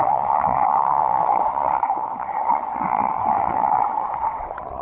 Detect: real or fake fake